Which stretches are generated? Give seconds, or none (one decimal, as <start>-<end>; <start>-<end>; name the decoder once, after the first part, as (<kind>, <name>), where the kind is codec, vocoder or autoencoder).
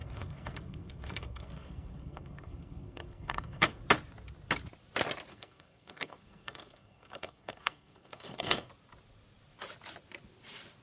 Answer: 0.0-3.8 (codec, SNAC); 5.3-8.7